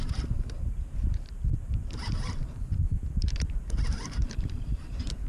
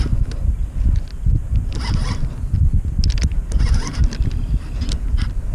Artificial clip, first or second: first